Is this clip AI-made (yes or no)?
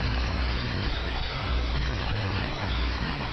yes